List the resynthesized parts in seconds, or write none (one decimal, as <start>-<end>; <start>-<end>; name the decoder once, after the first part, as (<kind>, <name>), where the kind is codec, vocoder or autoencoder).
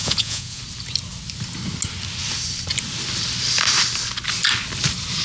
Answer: 0.0-0.6 (vocoder, Vocos)